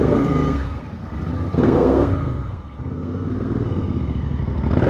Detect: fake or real fake